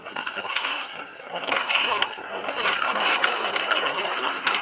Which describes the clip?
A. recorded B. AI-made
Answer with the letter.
B